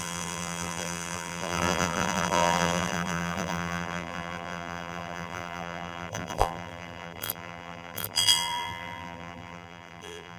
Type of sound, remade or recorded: remade